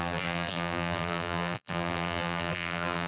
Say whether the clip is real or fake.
fake